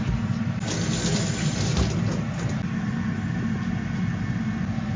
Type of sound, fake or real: real